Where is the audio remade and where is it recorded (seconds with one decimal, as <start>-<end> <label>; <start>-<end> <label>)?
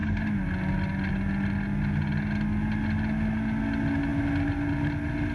0.0-5.3 recorded